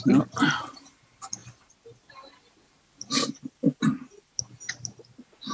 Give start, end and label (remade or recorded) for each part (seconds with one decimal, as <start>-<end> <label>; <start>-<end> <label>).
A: 0.0-5.5 recorded